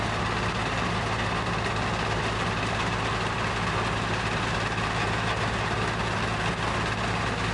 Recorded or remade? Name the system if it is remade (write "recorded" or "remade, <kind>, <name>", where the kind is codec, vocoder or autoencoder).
recorded